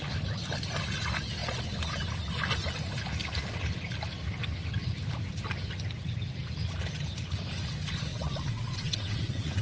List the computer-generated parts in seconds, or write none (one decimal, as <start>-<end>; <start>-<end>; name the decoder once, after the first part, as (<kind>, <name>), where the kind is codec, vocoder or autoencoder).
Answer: 8.1-9.6 (vocoder, WaveNeXt)